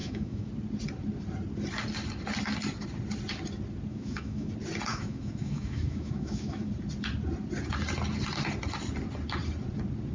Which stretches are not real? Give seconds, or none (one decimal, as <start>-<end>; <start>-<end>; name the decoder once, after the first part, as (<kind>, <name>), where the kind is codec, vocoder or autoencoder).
0.0-0.5 (autoencoder, DAC-VAE); 3.9-4.5; 4.9-6.7